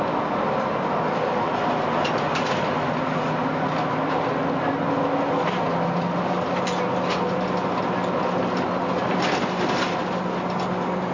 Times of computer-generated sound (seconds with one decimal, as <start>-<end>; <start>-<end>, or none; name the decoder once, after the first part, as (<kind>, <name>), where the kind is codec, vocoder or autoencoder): none